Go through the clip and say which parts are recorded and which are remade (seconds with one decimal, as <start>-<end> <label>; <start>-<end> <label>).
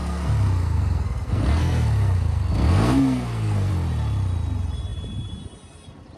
0.0-3.7 remade; 3.7-6.2 recorded